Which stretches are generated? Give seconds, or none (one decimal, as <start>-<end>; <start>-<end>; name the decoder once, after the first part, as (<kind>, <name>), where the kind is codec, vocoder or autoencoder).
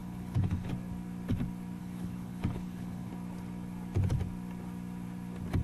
0.0-0.7 (codec, HILCodec); 1.8-3.1